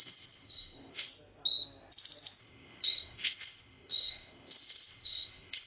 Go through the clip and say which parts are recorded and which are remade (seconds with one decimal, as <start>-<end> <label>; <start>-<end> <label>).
0.0-1.1 remade; 1.1-2.4 recorded; 2.4-5.7 remade